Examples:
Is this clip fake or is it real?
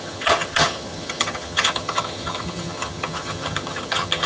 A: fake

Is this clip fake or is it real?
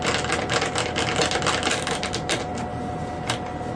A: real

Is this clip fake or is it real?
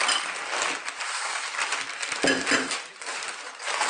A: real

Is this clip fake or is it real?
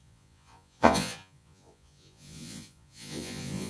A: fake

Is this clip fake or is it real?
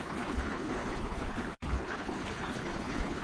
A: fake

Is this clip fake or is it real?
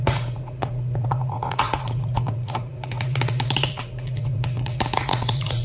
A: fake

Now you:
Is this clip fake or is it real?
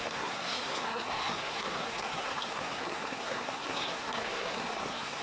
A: fake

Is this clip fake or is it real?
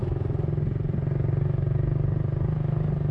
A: real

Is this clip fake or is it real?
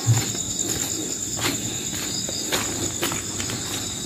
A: real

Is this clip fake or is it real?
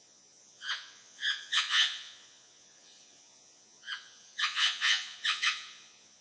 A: fake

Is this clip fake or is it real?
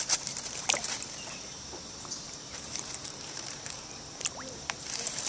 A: fake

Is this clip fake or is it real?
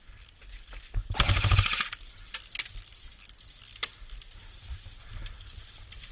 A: real